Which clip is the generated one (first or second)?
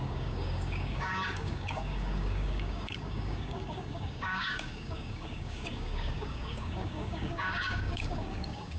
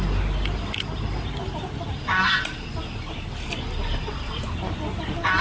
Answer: first